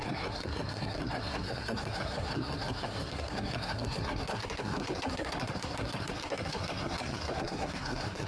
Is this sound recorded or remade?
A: remade